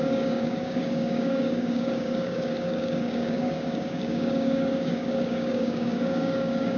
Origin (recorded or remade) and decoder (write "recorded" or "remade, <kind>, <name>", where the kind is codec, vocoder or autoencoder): remade, codec, DAC